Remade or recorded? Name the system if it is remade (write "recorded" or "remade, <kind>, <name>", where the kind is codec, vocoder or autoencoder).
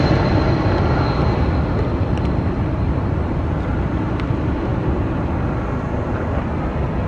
recorded